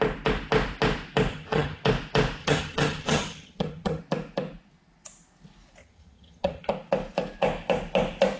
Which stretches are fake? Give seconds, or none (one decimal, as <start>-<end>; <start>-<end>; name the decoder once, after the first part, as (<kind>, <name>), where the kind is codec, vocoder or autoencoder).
1.3-1.8 (vocoder, HiFi-GAN); 2.4-4.0; 5.8-6.7